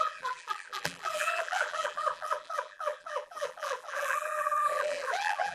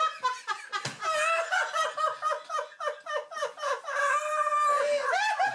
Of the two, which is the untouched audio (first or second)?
second